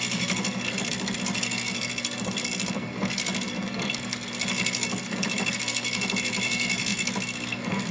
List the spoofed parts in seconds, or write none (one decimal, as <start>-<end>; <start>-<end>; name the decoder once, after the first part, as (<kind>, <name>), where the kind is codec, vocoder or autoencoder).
0.0-7.9 (codec, SNAC)

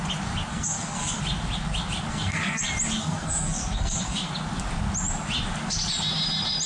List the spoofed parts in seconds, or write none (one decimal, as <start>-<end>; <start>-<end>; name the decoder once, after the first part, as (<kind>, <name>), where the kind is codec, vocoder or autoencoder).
0.5-1.2 (codec, SNAC); 2.1-2.6; 3.0-4.3

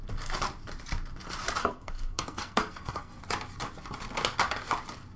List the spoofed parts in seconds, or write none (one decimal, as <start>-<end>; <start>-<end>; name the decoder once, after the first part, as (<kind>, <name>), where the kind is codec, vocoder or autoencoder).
1.6-3.2 (codec, SNAC)

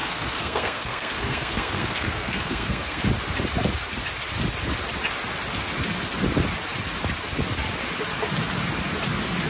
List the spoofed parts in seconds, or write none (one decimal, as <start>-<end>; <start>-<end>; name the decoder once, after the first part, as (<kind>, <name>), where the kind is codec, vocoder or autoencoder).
0.0-3.0 (codec, SNAC)

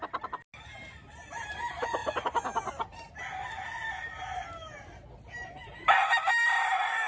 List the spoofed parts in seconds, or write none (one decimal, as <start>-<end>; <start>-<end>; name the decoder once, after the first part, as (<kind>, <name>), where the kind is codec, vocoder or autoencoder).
none

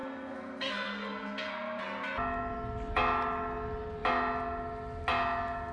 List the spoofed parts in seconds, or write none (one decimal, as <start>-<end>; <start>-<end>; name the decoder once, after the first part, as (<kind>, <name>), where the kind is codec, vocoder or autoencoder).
0.0-1.8 (codec, SNAC)